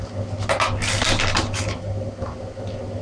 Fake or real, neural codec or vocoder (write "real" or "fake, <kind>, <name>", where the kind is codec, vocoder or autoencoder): real